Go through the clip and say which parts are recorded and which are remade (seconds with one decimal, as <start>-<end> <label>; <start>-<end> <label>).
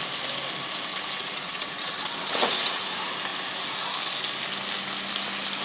0.0-0.9 recorded; 0.9-2.9 remade; 2.9-5.6 recorded